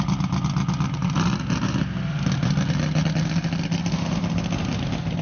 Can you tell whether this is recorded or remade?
recorded